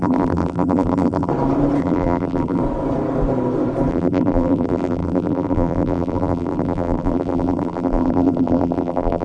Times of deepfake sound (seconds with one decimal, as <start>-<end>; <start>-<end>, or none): 0.0-1.3; 1.8-2.6; 3.9-9.2